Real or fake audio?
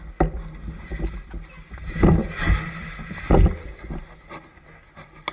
real